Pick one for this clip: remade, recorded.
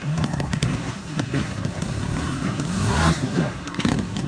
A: remade